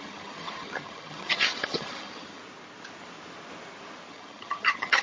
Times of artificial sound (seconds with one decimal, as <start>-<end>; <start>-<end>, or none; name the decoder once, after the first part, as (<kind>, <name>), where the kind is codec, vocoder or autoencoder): 0.0-2.4 (vocoder, HiFi-GAN); 4.1-5.0